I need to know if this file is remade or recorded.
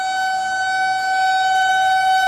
recorded